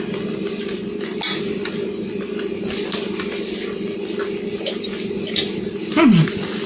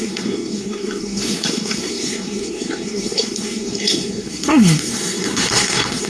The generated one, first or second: second